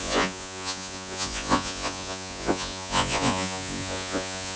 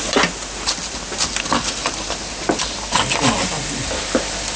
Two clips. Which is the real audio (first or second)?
second